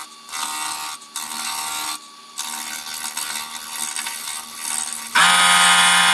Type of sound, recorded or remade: recorded